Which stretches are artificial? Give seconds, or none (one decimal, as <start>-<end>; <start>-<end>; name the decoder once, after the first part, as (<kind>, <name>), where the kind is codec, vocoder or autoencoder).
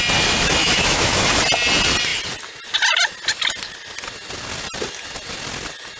0.6-1.2 (autoencoder, DAC-VAE)